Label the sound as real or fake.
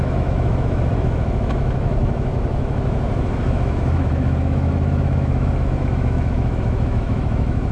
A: fake